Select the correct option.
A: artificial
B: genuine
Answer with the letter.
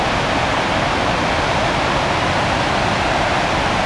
B